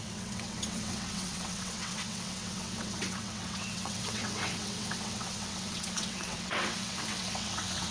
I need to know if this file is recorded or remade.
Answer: remade